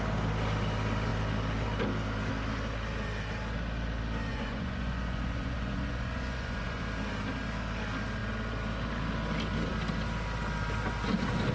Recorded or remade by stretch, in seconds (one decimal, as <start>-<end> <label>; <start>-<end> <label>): 0.0-4.3 recorded; 4.3-6.8 remade; 6.8-11.5 recorded